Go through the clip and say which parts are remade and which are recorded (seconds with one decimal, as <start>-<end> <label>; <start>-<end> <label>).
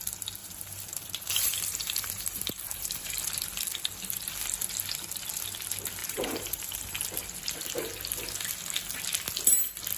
0.0-0.4 recorded; 0.4-3.1 remade; 3.1-6.0 recorded; 6.0-7.0 remade; 7.0-10.0 recorded